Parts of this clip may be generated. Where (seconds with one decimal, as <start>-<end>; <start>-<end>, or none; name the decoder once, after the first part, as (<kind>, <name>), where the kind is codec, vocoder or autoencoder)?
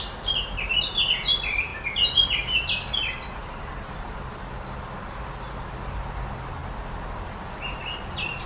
none